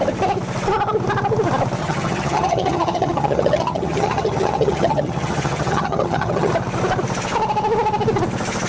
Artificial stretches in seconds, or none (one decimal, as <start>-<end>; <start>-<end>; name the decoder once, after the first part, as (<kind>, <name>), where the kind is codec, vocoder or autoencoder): 1.8-6.5 (vocoder, HiFi-GAN)